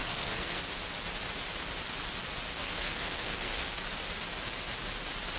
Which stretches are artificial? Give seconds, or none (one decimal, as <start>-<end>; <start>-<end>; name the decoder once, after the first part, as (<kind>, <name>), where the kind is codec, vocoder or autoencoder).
0.0-0.6 (codec, SNAC); 2.6-3.7